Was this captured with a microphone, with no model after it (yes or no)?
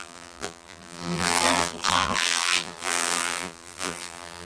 no